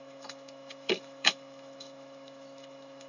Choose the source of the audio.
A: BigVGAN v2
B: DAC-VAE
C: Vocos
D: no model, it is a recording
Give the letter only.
B